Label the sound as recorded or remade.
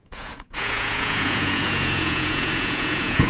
remade